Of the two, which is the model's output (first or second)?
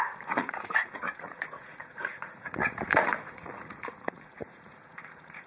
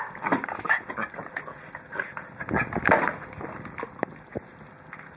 first